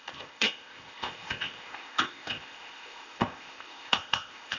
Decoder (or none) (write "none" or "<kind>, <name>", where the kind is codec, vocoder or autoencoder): codec, ZipCodec